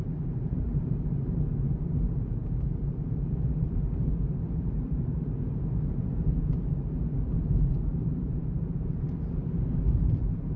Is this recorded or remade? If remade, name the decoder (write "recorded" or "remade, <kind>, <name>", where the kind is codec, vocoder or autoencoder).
remade, vocoder, BigVGAN v2